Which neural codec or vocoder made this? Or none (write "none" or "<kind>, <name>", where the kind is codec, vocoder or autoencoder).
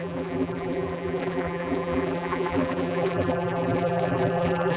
vocoder, BigVGAN v2